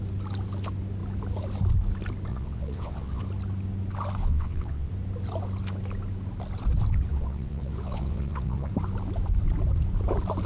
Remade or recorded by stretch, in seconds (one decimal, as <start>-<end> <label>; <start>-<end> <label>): 0.0-2.3 recorded; 2.3-3.2 remade; 3.2-4.2 recorded; 4.2-4.9 remade; 4.9-7.1 recorded; 7.1-8.7 remade; 8.7-10.5 recorded